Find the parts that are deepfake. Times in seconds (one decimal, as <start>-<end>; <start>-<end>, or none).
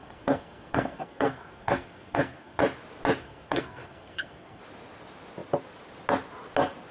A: 0.0-2.6; 3.2-4.6